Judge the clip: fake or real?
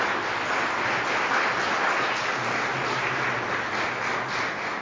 real